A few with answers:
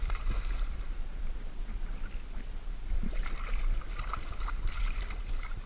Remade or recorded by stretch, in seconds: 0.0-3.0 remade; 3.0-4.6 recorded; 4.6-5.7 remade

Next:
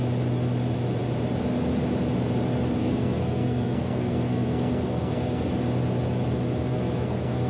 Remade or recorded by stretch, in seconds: 0.0-2.8 recorded; 2.8-5.5 remade; 5.5-6.7 recorded; 6.7-7.5 remade

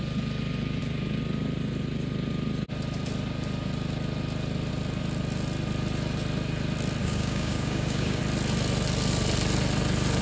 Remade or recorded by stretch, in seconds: 0.0-7.0 recorded; 7.0-8.2 remade; 8.2-10.2 recorded